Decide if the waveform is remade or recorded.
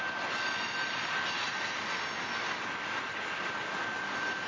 recorded